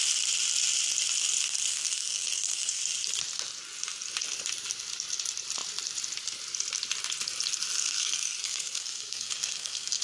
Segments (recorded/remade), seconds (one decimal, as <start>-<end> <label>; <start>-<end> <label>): 0.0-1.7 recorded; 1.7-2.8 remade; 2.8-7.8 recorded; 7.8-10.0 remade